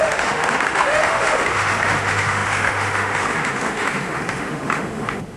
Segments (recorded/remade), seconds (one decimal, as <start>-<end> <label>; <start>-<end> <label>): 0.0-5.4 remade